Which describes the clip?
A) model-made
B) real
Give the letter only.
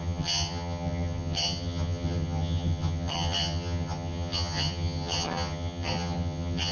A